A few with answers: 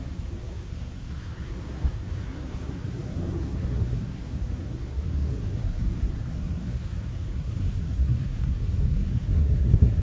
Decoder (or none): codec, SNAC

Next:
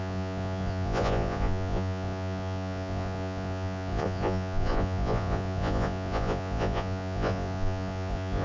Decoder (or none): vocoder, Vocos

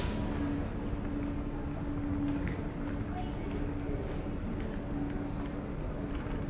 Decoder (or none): none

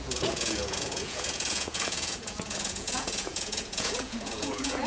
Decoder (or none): vocoder, Vocos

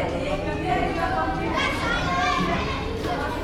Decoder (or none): none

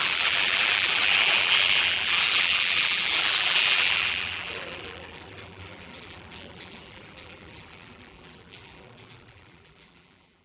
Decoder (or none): vocoder, BigVGAN v2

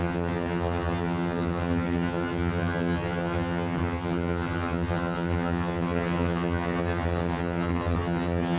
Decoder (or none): vocoder, HiFi-GAN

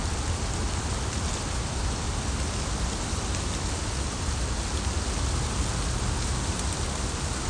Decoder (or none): none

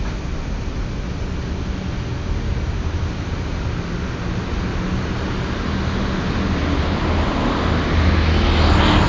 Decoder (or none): none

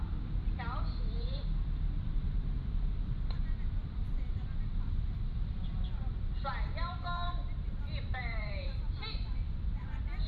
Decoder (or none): vocoder, BigVGAN v2